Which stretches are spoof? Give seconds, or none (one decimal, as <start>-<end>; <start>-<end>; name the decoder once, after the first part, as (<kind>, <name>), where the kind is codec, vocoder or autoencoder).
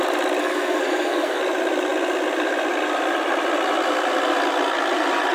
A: 0.4-1.4 (codec, SNAC)